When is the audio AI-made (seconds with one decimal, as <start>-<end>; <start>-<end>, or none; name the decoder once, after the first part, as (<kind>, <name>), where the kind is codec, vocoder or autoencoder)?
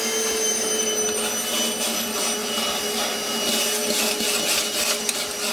none